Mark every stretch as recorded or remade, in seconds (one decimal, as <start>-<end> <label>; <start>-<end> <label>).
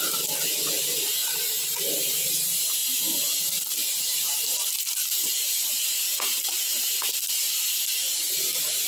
0.0-2.8 remade; 2.8-4.0 recorded; 4.0-8.9 remade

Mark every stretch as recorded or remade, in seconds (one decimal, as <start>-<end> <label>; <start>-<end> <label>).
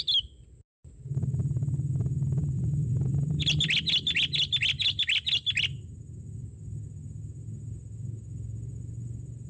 0.0-2.4 recorded; 2.4-3.3 remade; 3.3-9.5 recorded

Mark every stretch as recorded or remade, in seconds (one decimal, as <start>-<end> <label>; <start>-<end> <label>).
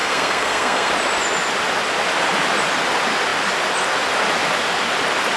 0.0-0.9 remade; 0.9-5.4 recorded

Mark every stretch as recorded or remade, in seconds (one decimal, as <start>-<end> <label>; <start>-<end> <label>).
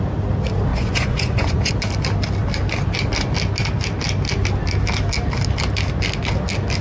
0.0-0.7 recorded; 0.7-1.7 remade; 1.7-6.8 recorded